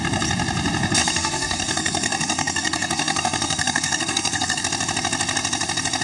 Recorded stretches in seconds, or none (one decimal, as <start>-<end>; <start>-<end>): 0.0-1.0; 4.6-6.0